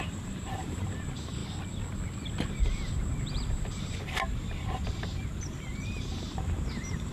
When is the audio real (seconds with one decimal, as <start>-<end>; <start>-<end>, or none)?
1.4-2.5